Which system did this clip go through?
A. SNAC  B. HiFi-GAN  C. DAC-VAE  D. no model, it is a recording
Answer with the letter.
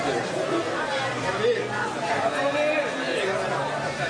D